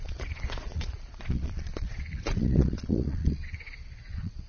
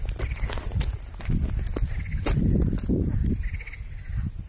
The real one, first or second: second